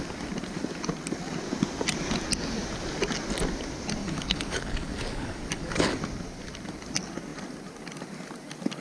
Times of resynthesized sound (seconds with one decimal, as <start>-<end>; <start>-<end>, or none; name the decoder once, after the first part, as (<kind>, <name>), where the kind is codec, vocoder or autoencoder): 4.0-6.0 (codec, DAC)